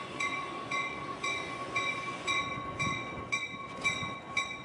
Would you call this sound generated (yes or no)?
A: yes